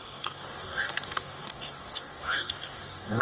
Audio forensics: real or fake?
fake